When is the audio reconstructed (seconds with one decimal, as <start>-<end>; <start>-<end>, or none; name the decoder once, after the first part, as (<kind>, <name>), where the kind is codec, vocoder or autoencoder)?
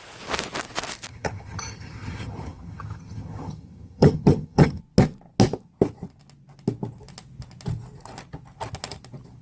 1.1-4.8 (vocoder, HiFi-GAN)